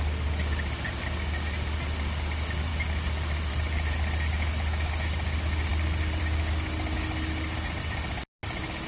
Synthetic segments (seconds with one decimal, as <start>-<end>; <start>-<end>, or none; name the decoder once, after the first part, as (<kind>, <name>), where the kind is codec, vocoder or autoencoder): none